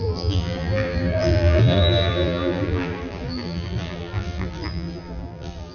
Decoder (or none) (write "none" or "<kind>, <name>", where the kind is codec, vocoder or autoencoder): vocoder, BigVGAN v2